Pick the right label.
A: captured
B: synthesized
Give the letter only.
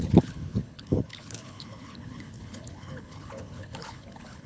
B